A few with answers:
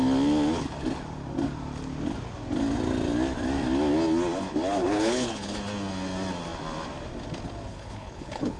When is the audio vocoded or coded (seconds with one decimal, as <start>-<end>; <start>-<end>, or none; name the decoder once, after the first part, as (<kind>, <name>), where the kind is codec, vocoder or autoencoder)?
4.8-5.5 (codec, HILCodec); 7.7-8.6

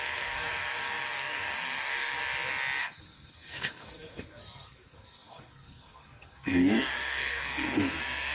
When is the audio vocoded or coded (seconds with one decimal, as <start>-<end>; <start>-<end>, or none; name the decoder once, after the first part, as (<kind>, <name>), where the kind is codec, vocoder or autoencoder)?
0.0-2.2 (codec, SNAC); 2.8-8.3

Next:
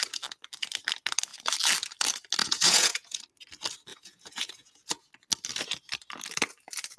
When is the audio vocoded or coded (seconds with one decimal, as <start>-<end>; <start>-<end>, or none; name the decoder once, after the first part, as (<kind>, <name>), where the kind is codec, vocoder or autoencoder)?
2.4-3.2 (vocoder, Vocos); 3.9-5.1

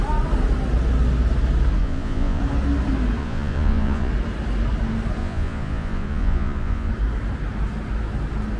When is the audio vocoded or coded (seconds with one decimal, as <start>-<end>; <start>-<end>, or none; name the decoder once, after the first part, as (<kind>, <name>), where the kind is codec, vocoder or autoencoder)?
1.8-2.4 (vocoder, Vocos); 3.2-4.1; 5.2-6.9

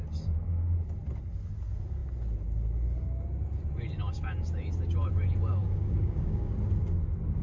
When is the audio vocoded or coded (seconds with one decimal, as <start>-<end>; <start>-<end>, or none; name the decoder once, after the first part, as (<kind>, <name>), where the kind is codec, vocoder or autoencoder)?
5.6-6.5 (codec, DAC)